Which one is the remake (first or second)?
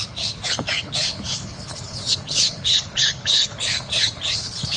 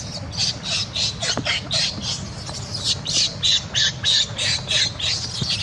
first